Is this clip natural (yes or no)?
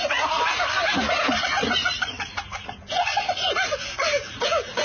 yes